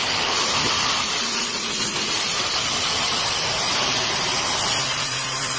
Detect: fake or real fake